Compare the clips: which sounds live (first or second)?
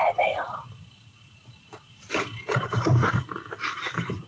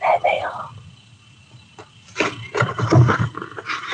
second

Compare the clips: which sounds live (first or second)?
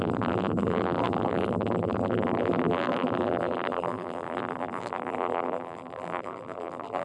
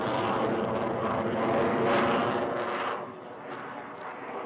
second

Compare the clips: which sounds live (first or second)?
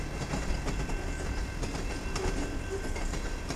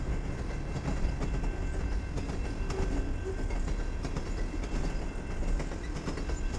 second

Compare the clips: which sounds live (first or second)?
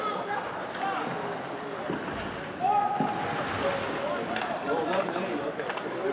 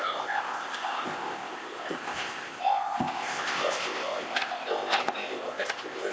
first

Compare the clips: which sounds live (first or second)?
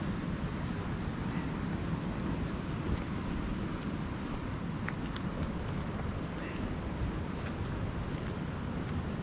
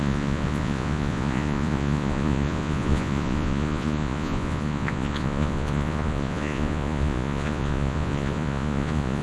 first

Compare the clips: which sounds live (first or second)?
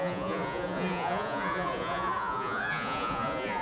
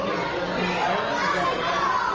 second